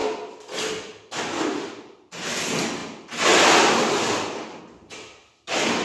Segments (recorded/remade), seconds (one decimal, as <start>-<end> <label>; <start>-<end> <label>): 0.0-5.8 recorded